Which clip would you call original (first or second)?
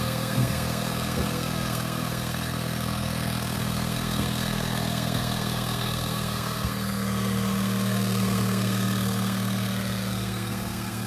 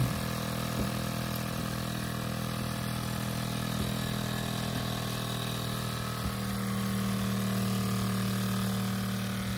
second